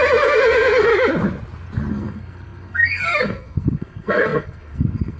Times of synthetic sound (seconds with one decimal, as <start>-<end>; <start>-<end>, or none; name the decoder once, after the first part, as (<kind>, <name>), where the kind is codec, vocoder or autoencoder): 0.0-0.9 (codec, SNAC); 1.9-5.2